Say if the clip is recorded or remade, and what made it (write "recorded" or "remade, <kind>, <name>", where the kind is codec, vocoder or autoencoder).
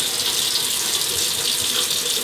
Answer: recorded